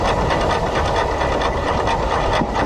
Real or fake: real